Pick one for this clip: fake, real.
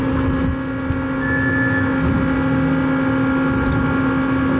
real